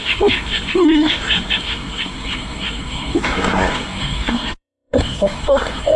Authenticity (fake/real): fake